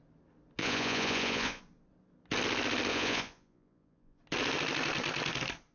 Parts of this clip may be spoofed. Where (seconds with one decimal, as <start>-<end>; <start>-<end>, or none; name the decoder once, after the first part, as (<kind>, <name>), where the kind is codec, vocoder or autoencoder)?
0.6-1.6 (vocoder, Vocos); 2.9-4.2